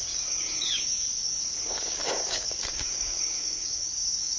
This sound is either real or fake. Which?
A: fake